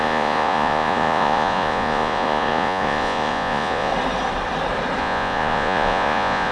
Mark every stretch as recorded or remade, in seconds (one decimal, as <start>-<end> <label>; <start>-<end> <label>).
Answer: 0.0-3.9 remade; 3.9-5.0 recorded; 5.0-6.5 remade